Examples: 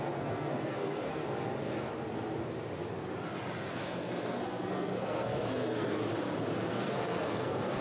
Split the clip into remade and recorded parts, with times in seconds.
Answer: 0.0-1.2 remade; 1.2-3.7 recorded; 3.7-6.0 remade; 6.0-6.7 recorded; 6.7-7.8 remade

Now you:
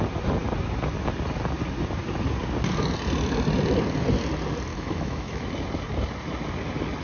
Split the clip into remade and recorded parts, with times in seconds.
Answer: 0.0-4.7 recorded; 4.7-5.5 remade; 5.5-7.0 recorded

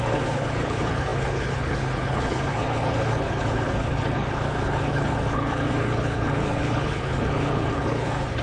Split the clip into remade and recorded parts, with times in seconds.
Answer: 0.0-8.4 remade

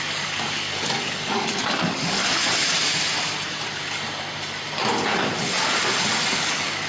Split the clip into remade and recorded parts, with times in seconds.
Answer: 0.0-2.2 remade; 2.2-6.3 recorded; 6.3-6.9 remade

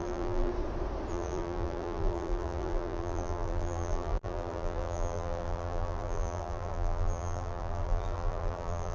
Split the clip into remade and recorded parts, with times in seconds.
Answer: 0.0-0.5 remade; 0.5-1.1 recorded; 1.1-8.9 remade

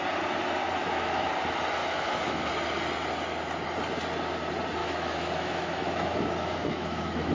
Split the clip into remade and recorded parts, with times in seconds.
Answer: 0.0-0.8 recorded; 0.8-1.3 remade; 1.3-1.8 recorded; 1.8-2.5 remade; 2.5-4.8 recorded; 4.8-7.3 remade

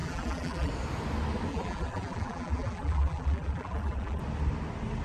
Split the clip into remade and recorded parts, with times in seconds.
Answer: 0.0-0.7 remade; 0.7-1.5 recorded; 1.5-4.2 remade; 4.2-5.0 recorded